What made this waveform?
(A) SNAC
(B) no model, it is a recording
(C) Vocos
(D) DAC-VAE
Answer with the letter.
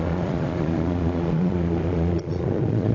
C